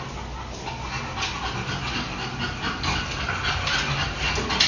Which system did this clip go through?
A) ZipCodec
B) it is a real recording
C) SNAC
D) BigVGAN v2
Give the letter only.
B